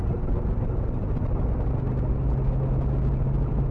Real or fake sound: real